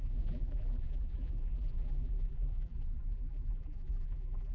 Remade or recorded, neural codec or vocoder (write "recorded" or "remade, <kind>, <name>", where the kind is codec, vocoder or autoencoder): remade, vocoder, BigVGAN v2